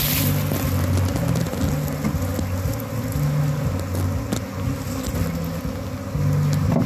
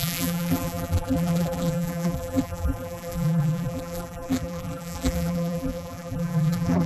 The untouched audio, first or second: first